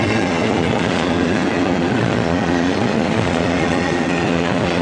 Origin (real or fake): fake